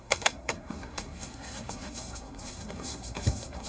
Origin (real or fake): fake